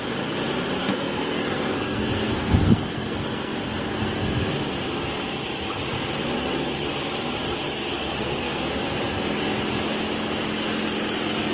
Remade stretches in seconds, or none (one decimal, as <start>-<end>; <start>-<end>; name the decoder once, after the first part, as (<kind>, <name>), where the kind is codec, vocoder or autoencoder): 0.8-4.7 (codec, SNAC); 7.9-8.6